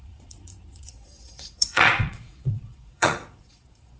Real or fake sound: fake